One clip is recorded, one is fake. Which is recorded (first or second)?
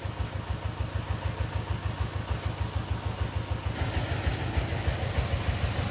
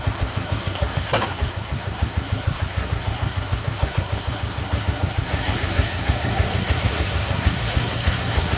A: first